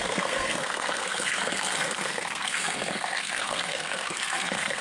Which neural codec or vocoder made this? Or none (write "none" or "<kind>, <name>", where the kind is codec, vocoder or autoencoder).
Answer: codec, SNAC